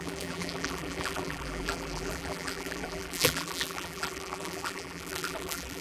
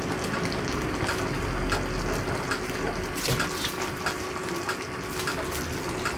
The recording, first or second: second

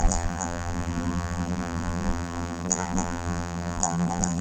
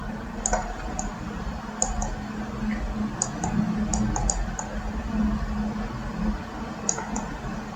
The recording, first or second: second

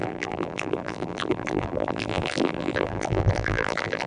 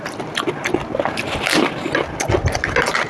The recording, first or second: second